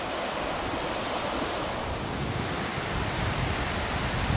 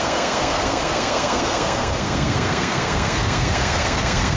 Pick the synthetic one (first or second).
second